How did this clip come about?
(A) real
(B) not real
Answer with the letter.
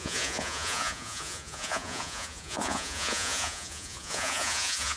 B